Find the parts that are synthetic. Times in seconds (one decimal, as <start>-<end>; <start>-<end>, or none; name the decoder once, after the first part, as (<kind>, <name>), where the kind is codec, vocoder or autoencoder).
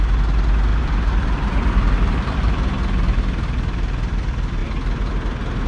0.7-2.4 (vocoder, BigVGAN v2)